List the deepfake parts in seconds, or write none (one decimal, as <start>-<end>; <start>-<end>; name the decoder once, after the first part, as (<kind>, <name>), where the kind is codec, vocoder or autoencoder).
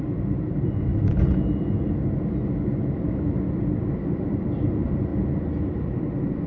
none